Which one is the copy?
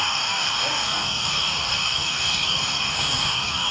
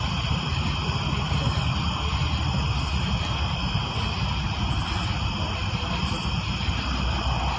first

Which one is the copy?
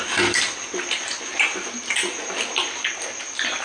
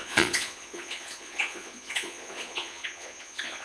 second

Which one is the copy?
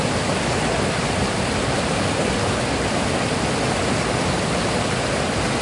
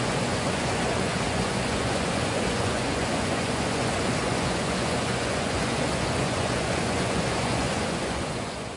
second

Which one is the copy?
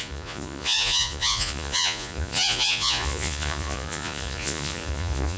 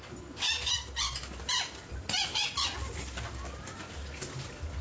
first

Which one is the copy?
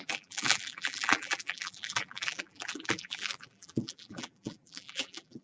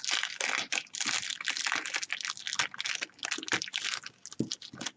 first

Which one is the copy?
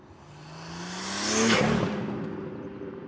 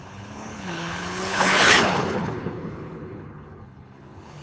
second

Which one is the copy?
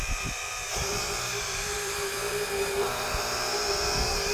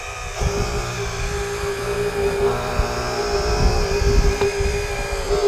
first